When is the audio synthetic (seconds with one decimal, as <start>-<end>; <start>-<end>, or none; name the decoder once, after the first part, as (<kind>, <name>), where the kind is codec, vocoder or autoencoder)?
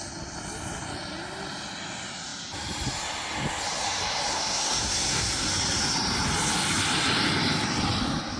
4.3-5.5 (codec, SNAC)